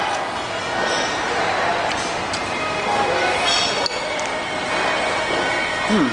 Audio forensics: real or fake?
real